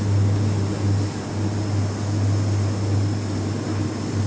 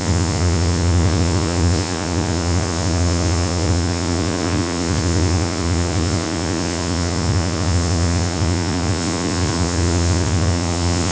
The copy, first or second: second